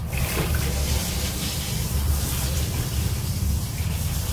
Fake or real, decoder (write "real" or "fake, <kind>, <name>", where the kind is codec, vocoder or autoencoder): fake, vocoder, BigVGAN v2